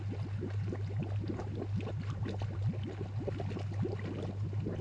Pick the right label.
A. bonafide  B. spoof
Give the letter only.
A